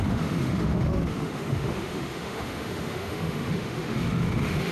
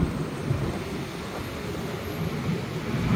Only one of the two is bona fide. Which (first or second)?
second